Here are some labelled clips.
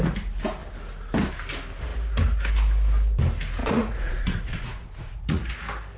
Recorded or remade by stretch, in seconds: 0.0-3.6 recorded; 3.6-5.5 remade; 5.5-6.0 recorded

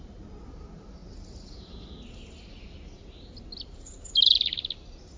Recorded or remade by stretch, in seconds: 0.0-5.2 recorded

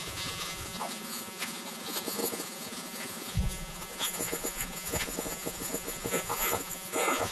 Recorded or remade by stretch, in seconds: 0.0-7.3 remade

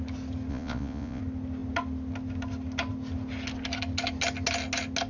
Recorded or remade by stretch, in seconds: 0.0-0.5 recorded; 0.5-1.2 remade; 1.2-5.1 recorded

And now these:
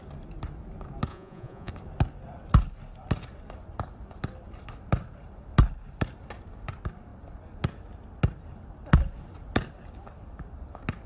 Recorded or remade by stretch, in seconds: 0.0-1.1 recorded; 1.1-1.7 remade; 1.7-11.1 recorded

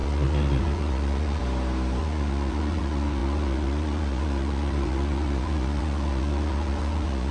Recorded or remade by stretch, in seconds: 0.0-1.4 remade; 1.4-2.0 recorded; 2.0-7.3 remade

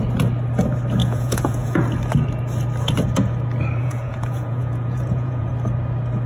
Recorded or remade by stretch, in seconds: 0.0-1.0 recorded; 1.0-1.8 remade; 1.8-3.8 recorded; 3.8-5.5 remade; 5.5-6.3 recorded